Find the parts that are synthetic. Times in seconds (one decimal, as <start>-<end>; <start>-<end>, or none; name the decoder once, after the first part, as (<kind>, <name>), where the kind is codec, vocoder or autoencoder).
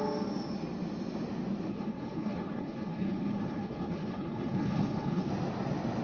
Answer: 1.7-5.3 (codec, HILCodec)